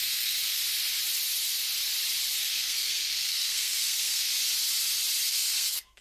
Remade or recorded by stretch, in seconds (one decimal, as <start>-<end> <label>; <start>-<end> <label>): 0.0-0.6 remade; 0.6-2.4 recorded; 2.4-4.3 remade; 4.3-5.3 recorded; 5.3-6.0 remade